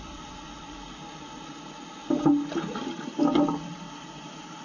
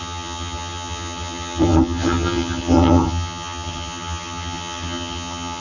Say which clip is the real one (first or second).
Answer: first